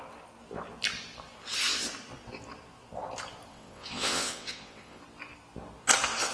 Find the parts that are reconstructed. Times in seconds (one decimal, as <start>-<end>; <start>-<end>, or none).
3.5-5.0